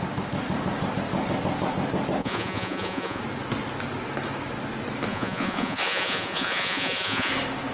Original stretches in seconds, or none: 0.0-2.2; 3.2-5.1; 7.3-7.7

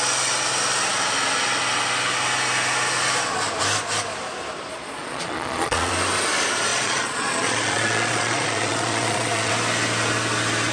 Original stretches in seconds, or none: 0.0-4.7; 5.9-6.7; 9.5-10.7

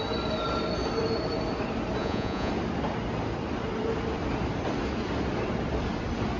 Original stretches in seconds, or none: 0.0-2.0; 2.5-6.4